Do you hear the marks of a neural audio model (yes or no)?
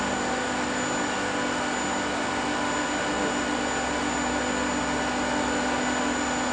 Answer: no